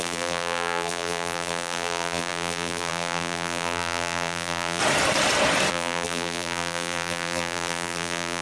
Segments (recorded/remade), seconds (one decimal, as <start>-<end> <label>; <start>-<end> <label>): 0.0-4.8 remade; 4.8-5.7 recorded; 5.7-8.4 remade